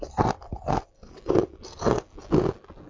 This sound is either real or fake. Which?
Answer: real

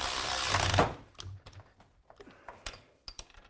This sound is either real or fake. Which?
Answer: real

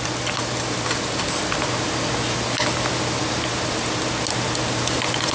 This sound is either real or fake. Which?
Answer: real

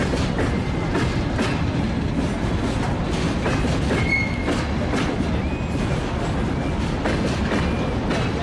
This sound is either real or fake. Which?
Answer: real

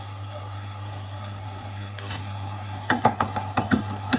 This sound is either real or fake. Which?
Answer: fake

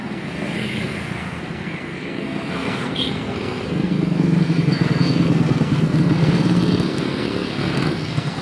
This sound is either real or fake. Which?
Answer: fake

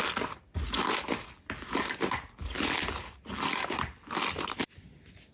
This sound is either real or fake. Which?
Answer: real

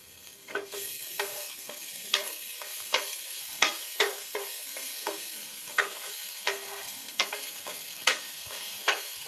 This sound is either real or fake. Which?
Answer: fake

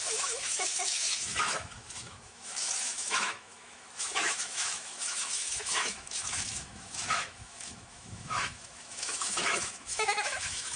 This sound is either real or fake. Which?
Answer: fake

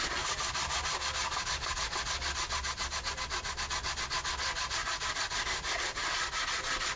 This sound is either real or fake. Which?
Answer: real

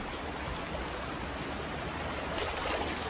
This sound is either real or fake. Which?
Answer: real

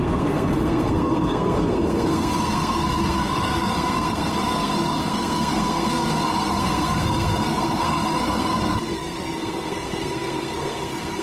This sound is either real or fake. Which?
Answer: fake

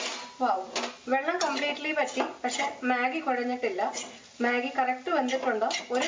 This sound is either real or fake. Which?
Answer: real